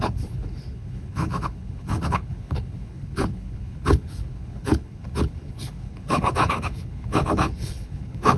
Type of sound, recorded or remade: remade